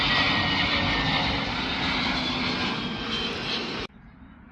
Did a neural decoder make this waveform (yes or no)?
no